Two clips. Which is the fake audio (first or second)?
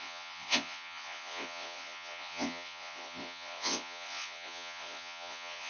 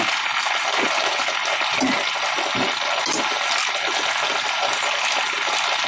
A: first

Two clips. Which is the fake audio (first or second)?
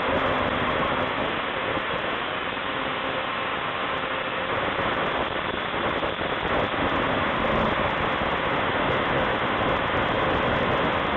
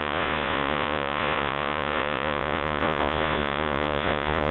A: second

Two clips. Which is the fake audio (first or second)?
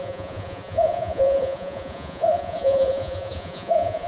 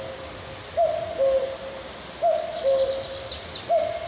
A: first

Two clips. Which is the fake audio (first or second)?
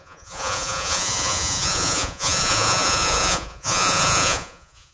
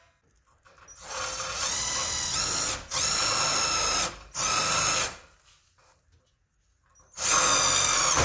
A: first